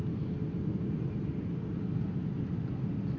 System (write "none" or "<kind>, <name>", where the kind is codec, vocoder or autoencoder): none